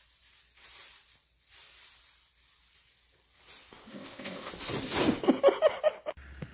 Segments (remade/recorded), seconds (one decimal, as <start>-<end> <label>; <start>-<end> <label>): 0.0-3.9 recorded; 3.9-4.5 remade; 4.5-6.5 recorded